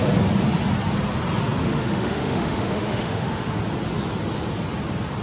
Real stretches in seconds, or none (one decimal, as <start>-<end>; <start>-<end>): 0.0-1.6; 3.6-5.2